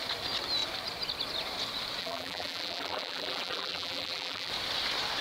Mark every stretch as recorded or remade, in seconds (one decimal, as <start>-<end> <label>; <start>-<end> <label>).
0.0-2.0 recorded; 2.0-4.5 remade; 4.5-5.2 recorded